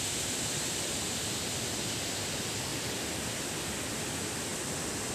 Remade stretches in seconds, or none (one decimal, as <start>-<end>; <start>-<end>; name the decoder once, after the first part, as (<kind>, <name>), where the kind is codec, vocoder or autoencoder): 2.7-3.3 (vocoder, BigVGAN v2)